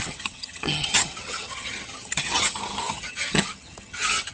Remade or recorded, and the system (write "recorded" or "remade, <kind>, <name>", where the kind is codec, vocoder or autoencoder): remade, vocoder, HiFi-GAN